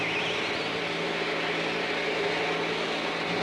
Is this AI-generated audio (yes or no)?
no